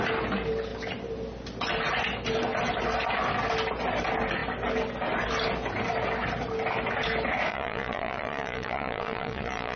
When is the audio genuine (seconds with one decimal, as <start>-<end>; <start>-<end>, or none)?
0.0-7.5